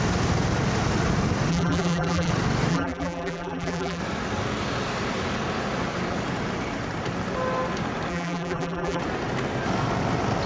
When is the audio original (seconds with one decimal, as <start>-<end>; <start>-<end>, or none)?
0.0-1.5; 2.3-2.7; 4.0-8.1; 9.0-10.5